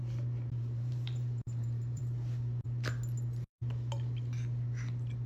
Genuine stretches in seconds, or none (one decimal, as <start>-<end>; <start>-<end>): 0.0-0.5; 2.0-5.3

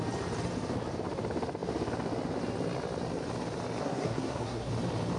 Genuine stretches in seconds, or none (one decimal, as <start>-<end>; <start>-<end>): 0.0-3.8; 4.7-5.2

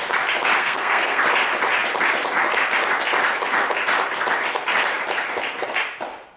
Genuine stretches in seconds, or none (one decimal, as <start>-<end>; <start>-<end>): 0.0-0.6; 1.2-6.4

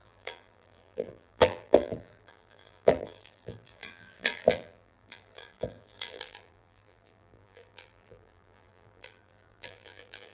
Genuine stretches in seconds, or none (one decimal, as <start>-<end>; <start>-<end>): none

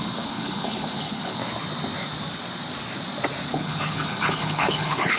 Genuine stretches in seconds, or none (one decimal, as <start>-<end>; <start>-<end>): 1.4-3.5

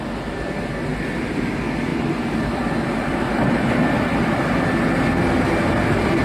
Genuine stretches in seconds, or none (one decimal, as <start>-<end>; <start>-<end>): 0.0-0.9; 1.5-1.9; 4.8-6.2

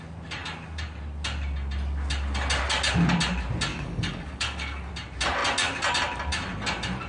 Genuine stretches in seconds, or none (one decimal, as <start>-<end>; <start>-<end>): 0.0-3.7; 4.9-7.1

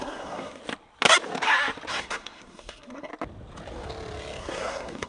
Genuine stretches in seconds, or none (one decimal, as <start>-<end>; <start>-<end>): 0.6-1.9; 3.1-4.4